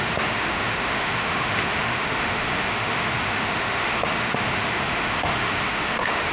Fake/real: fake